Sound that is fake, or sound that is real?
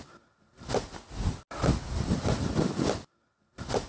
real